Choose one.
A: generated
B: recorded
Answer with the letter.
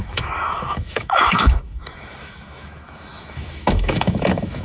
A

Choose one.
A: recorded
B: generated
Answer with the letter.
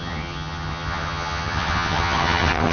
B